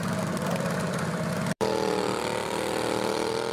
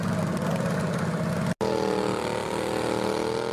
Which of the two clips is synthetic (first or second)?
first